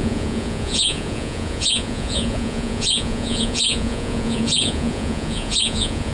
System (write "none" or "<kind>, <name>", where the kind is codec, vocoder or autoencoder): vocoder, Vocos